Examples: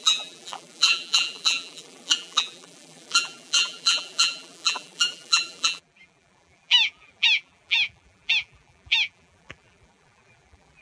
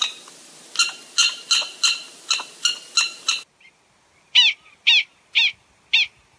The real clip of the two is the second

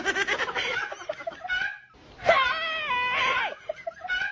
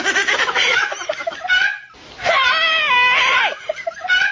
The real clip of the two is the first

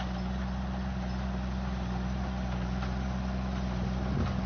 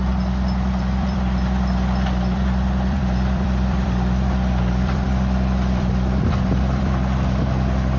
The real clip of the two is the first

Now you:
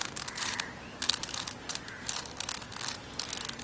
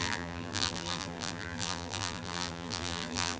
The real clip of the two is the first